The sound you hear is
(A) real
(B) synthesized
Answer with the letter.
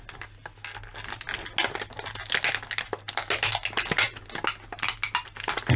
A